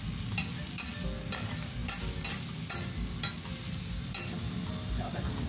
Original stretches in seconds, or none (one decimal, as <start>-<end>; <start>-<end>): 0.0-5.5